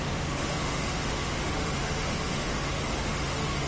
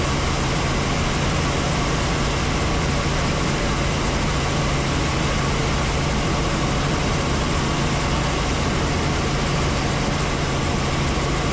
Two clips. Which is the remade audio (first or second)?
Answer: first